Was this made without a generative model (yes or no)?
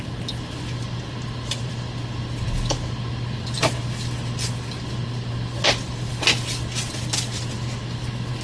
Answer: yes